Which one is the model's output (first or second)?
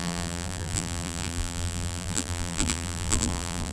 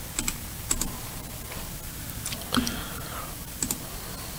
first